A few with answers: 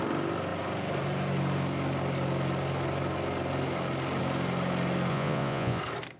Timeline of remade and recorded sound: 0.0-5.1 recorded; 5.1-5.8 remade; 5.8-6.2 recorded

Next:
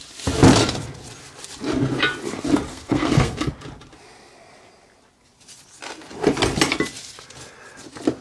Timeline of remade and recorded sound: 0.0-2.7 recorded; 2.7-3.5 remade; 3.5-8.2 recorded

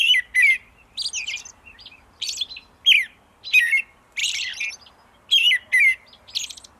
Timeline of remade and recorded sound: 0.0-4.2 recorded; 4.2-4.7 remade; 4.7-6.8 recorded